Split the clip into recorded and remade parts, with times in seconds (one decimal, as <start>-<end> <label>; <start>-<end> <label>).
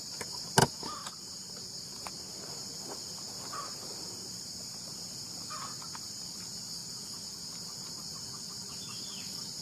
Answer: 0.0-9.6 recorded